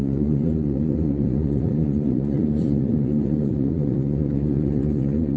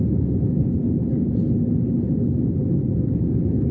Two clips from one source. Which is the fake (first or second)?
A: first